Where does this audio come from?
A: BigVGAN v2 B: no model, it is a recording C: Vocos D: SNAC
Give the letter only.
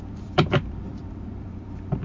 A